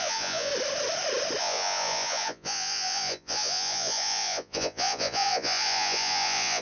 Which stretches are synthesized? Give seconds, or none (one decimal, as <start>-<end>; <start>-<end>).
0.0-0.5; 1.4-6.6

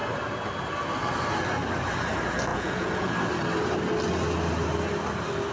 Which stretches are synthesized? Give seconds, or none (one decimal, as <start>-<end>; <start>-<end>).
2.5-3.1

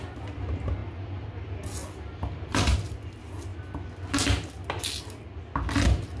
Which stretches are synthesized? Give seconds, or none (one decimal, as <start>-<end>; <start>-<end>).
none

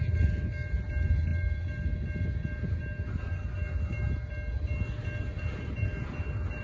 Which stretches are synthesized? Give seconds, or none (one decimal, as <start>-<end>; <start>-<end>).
none

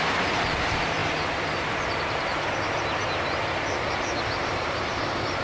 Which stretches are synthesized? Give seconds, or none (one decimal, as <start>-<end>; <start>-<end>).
none

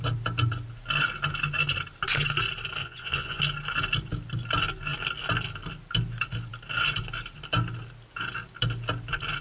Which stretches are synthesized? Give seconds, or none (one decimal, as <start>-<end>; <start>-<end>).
2.8-3.4

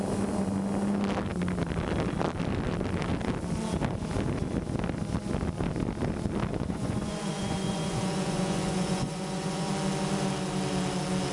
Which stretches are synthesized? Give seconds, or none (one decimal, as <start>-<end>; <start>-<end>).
6.5-9.7